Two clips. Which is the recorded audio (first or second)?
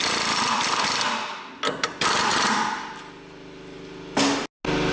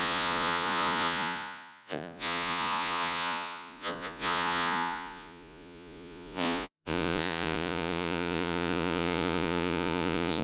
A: first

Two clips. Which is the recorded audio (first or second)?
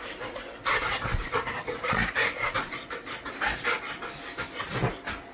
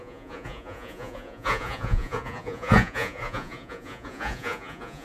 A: first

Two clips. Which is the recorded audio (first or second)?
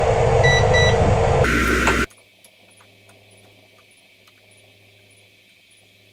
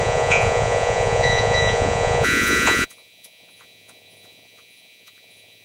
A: first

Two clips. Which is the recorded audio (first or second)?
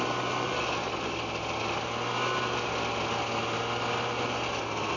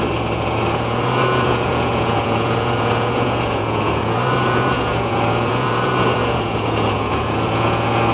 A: first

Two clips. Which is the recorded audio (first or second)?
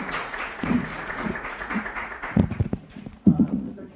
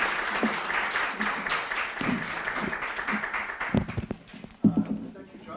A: second